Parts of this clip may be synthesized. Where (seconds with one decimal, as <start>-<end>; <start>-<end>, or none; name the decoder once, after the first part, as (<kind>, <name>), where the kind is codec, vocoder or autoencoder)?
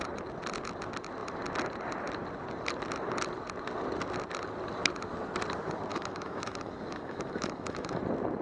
5.9-8.0 (autoencoder, DAC-VAE)